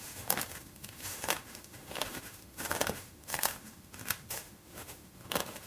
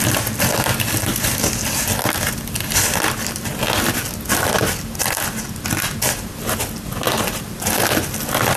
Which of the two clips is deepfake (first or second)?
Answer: first